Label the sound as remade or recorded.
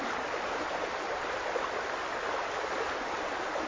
recorded